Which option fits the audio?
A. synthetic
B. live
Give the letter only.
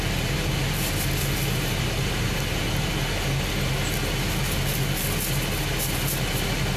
B